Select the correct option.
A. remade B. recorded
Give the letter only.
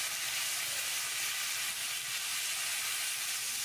B